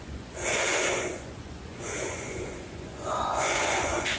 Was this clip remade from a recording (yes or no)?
yes